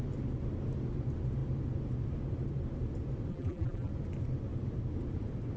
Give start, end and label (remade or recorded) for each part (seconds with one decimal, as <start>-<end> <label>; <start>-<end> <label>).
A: 0.0-3.3 recorded; 3.3-3.9 remade; 3.9-5.6 recorded